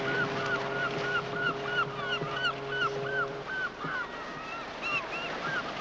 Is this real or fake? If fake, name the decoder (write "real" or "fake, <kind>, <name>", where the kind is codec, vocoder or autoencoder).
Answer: real